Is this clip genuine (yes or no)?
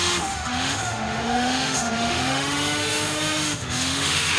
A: no